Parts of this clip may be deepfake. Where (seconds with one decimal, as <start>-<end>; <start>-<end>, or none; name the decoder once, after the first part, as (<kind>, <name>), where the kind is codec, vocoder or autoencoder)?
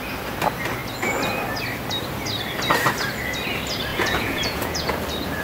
3.9-5.0 (vocoder, Vocos)